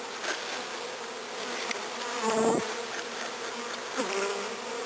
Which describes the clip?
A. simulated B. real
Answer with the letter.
B